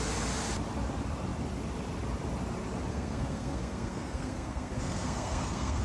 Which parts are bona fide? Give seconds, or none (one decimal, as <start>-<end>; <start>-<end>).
0.0-2.9